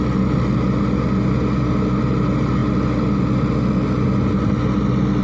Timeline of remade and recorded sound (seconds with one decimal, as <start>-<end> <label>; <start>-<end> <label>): 0.0-5.2 recorded